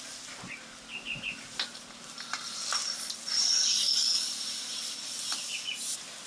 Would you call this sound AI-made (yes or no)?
no